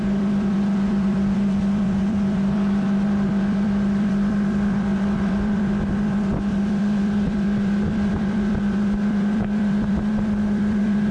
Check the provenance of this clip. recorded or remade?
remade